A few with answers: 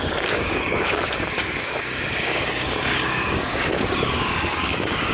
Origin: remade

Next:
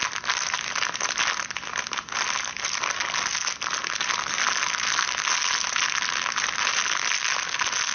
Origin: recorded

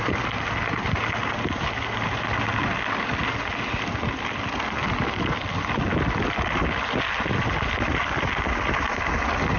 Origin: recorded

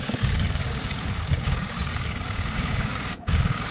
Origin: remade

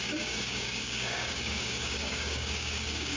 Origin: remade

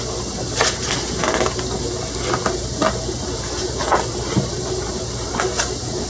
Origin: recorded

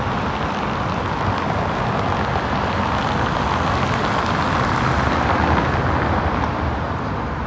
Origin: recorded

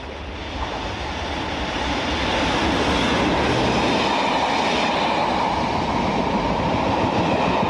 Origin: recorded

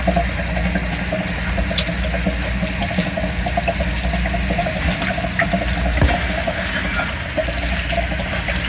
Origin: recorded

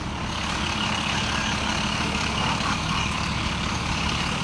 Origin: remade